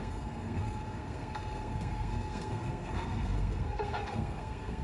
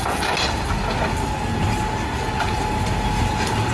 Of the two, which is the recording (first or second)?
second